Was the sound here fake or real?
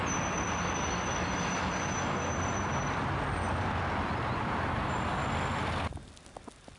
real